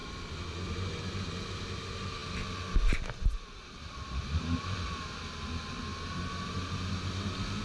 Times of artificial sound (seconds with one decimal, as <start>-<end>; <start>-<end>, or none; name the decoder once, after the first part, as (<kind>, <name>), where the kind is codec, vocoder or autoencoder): none